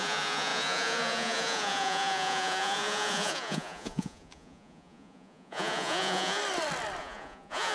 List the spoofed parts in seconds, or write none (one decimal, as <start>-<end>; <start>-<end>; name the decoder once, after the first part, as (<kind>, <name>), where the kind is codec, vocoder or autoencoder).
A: 0.0-6.4 (vocoder, Vocos); 7.0-7.7

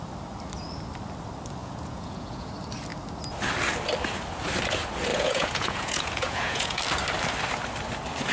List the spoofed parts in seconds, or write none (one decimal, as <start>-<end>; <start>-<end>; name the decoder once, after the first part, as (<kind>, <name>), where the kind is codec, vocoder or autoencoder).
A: 1.6-2.5 (vocoder, Vocos); 5.1-6.8

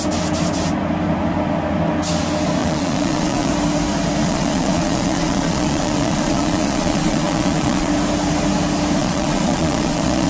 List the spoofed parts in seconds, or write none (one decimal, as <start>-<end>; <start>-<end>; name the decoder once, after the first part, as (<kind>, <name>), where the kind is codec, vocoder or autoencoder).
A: 2.6-3.5 (vocoder, Vocos); 4.2-7.9; 9.0-10.3

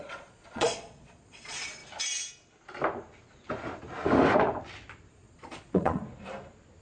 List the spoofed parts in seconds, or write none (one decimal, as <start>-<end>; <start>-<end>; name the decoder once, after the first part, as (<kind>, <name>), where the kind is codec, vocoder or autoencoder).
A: 0.0-1.8 (vocoder, Vocos); 5.1-6.0

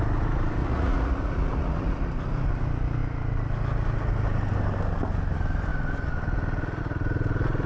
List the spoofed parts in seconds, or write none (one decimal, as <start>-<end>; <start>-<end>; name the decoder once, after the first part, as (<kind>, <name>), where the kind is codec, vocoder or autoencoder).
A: 0.6-2.1 (vocoder, Vocos)

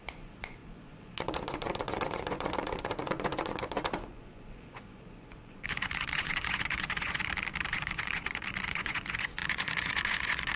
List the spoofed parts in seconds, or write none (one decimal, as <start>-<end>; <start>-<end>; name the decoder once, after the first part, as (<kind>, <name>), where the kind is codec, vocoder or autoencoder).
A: 0.0-7.2 (vocoder, Vocos); 7.7-10.6

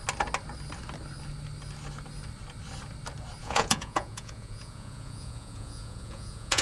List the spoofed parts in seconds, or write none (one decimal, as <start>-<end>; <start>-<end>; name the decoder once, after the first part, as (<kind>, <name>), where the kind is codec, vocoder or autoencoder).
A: 3.4-6.6 (vocoder, Vocos)

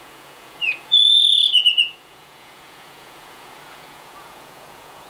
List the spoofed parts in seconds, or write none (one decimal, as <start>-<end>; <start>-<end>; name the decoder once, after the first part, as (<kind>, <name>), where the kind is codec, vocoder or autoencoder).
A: 0.0-5.1 (vocoder, Vocos)